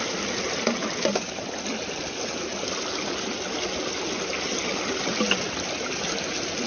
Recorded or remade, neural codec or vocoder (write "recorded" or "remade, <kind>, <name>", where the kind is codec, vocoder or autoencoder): recorded